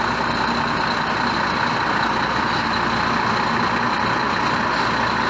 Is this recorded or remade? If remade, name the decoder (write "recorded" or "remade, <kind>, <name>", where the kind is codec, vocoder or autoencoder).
recorded